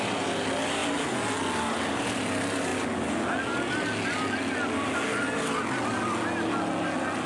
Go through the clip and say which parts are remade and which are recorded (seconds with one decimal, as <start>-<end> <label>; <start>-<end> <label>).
0.0-7.3 recorded